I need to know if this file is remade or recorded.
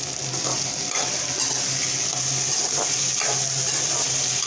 recorded